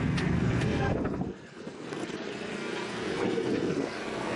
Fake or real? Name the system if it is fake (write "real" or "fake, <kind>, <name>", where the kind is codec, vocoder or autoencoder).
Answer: fake, codec, SNAC